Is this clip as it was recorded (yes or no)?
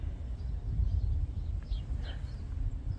yes